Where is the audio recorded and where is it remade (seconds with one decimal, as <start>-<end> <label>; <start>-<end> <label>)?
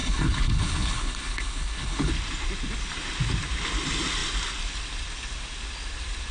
0.0-2.1 remade; 2.1-6.3 recorded